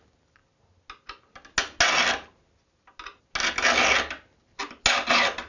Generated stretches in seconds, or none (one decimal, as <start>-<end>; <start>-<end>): none